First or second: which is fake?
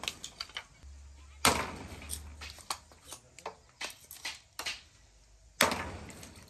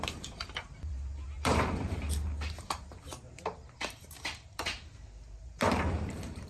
second